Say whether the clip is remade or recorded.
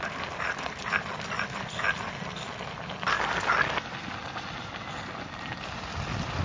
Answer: recorded